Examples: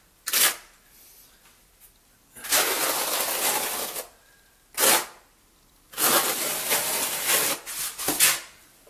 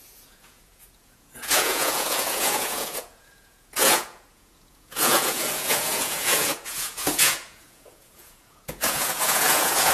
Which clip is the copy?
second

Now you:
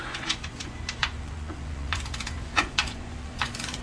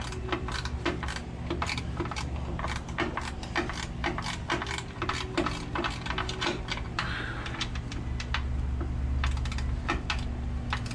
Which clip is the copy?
first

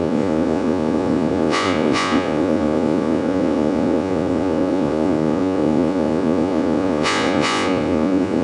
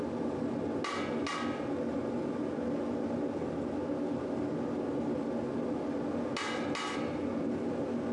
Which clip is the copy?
first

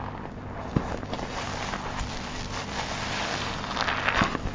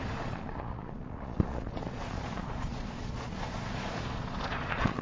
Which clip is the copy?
second